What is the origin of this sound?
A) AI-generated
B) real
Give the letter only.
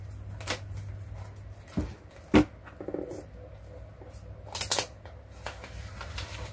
B